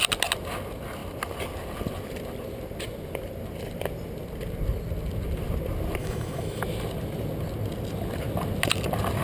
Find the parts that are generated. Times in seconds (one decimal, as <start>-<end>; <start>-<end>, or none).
6.0-6.6